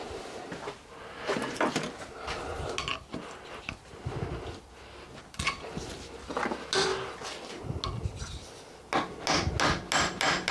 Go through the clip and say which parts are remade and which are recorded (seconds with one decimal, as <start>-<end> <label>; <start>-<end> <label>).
0.0-0.6 remade; 0.6-10.5 recorded